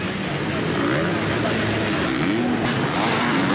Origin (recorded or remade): recorded